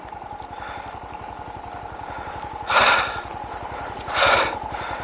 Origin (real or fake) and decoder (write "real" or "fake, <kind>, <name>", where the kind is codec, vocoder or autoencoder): fake, vocoder, BigVGAN v2